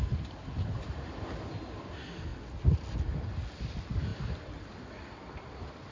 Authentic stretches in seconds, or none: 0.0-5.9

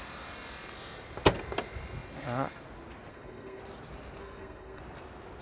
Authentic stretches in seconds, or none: 0.0-3.1; 3.6-4.2; 4.8-5.4